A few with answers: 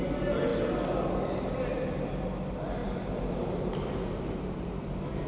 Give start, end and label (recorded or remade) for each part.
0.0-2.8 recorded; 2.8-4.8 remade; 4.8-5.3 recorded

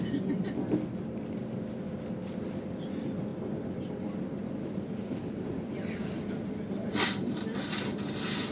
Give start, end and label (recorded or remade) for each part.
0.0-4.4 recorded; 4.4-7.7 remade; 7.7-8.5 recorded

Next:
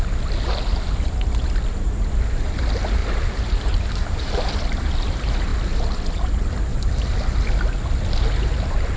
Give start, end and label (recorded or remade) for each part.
0.0-3.0 recorded; 3.0-4.3 remade; 4.3-9.0 recorded